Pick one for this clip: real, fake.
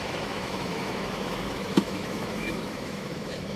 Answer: fake